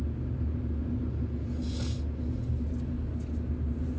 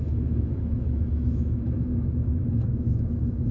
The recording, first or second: first